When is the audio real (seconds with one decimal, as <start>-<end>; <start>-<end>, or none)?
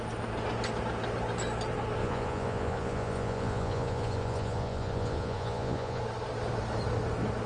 0.0-2.0; 6.0-7.5